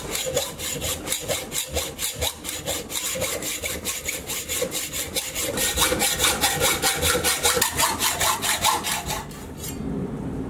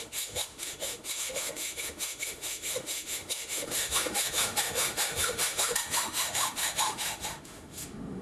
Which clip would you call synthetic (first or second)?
second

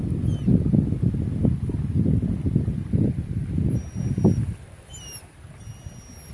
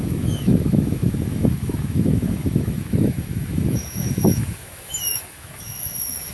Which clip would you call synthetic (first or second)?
second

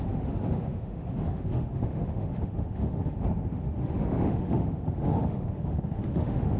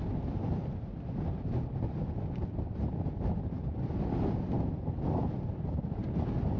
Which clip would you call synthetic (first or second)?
first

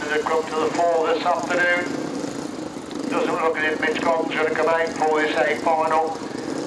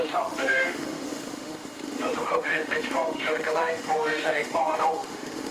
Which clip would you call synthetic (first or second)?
second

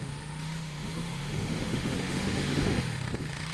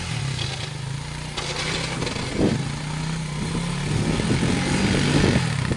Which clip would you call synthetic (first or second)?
first